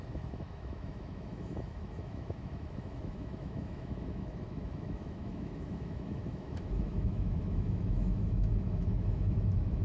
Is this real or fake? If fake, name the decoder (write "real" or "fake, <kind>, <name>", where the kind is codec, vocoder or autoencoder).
fake, autoencoder, DAC-VAE